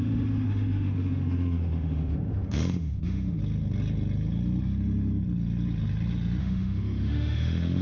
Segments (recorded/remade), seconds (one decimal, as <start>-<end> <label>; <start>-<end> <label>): 0.0-3.4 remade; 3.4-6.4 recorded; 6.4-7.8 remade